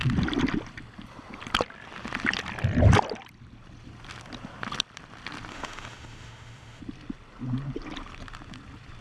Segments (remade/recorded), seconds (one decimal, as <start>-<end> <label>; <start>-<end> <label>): 0.0-5.5 recorded; 5.5-6.8 remade; 6.8-9.0 recorded